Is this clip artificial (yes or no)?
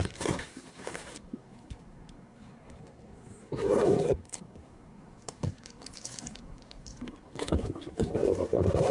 yes